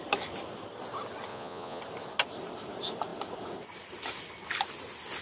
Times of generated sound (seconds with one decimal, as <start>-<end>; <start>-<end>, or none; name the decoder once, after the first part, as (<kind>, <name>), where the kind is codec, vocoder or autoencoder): 1.3-1.8 (vocoder, Vocos)